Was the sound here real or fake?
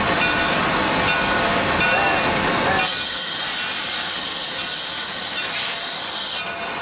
real